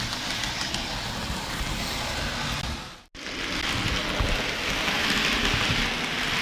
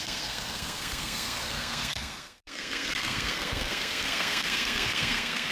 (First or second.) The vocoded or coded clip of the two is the second